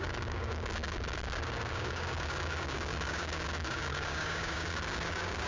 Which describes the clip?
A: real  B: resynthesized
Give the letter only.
B